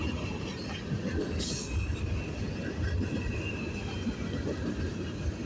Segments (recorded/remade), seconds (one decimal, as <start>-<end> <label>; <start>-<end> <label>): 0.0-1.2 recorded; 1.2-2.0 remade; 2.0-5.5 recorded